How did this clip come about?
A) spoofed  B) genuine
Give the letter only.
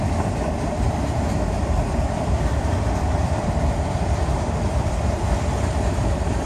A